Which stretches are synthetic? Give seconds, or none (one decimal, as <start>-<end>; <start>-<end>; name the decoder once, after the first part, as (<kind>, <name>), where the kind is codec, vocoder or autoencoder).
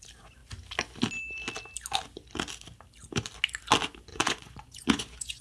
4.1-5.4 (vocoder, Vocos)